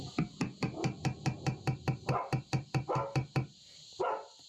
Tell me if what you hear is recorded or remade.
recorded